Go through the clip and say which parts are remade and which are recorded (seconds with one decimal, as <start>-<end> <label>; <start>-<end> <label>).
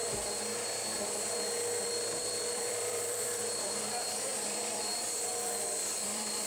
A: 0.0-1.8 recorded; 1.8-6.5 remade